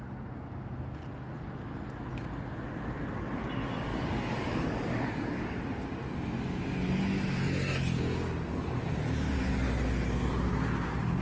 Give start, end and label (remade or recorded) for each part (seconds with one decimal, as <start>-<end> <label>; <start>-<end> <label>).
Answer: 0.0-3.9 recorded; 3.9-5.6 remade; 5.6-11.2 recorded